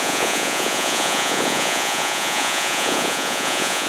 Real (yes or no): no